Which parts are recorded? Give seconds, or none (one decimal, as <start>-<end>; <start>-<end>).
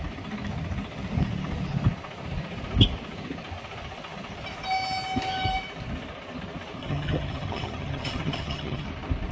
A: 0.0-6.8; 8.9-9.3